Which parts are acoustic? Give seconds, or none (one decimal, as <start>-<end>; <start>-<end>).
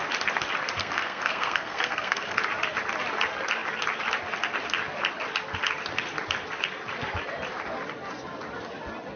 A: 0.0-0.8; 2.4-9.2